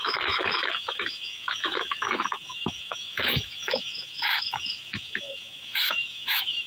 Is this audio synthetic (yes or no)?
yes